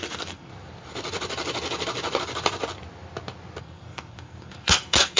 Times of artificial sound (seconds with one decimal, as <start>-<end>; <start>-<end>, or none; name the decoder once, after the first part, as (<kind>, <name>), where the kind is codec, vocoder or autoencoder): 0.0-0.5 (codec, SNAC); 3.6-5.2